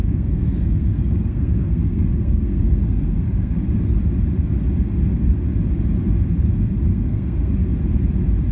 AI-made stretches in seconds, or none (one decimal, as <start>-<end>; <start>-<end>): 0.0-3.5; 6.9-7.5